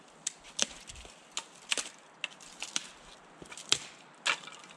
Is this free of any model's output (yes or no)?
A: yes